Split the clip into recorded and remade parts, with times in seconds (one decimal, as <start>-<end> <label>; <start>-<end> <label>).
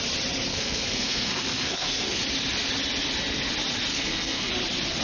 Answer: 0.0-0.5 recorded; 0.5-2.2 remade; 2.2-3.9 recorded; 3.9-4.5 remade; 4.5-5.0 recorded